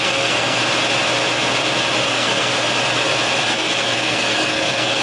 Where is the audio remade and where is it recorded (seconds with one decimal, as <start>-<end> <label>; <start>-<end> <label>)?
0.0-0.6 remade; 0.6-2.1 recorded; 2.1-2.5 remade; 2.5-3.5 recorded; 3.5-5.0 remade